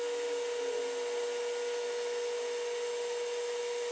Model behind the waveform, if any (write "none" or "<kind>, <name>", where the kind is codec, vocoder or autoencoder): none